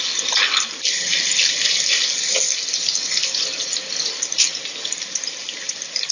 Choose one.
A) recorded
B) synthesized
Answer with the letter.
A